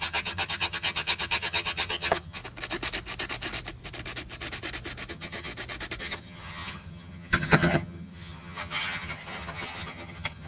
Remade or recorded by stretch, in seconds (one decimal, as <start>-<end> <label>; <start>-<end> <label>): 0.0-2.4 remade; 2.4-5.1 recorded; 5.1-5.5 remade; 5.5-6.0 recorded; 6.0-10.5 remade